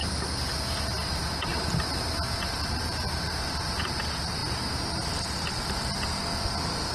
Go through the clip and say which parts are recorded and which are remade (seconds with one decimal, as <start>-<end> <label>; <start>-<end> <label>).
0.0-1.5 recorded; 1.5-3.8 remade; 3.8-6.9 recorded